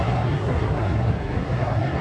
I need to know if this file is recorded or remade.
remade